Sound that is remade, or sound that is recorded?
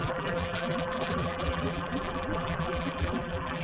remade